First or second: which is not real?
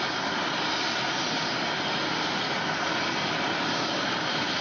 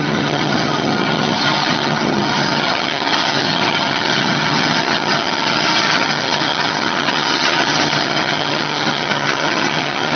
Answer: second